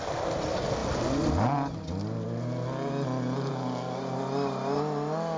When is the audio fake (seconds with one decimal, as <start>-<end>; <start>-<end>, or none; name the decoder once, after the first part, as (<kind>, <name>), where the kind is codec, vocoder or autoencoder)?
none